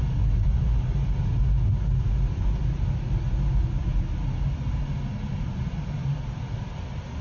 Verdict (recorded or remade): recorded